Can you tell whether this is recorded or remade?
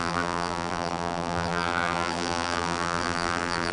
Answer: remade